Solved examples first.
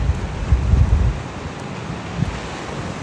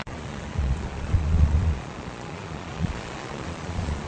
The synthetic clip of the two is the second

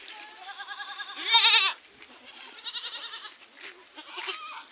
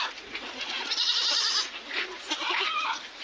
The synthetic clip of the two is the second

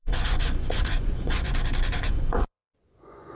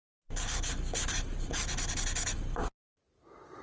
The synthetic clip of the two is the first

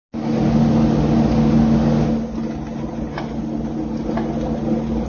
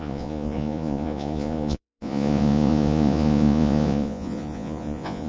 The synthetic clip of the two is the second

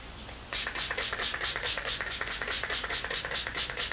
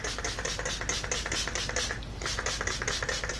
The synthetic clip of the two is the first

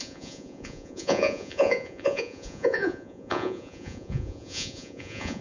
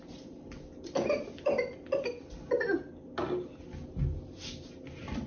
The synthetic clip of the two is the first